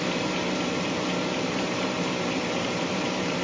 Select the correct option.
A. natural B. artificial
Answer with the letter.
B